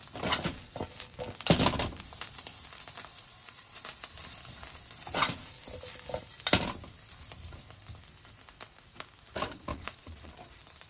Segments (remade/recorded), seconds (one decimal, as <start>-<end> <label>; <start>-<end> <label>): 0.0-3.1 recorded; 3.1-3.8 remade; 3.8-9.7 recorded; 9.7-10.3 remade; 10.3-10.9 recorded